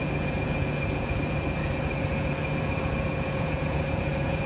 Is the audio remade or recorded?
remade